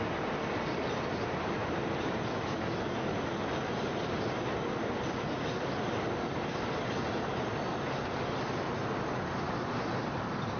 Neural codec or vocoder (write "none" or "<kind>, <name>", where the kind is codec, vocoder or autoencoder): none